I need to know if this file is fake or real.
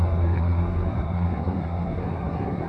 fake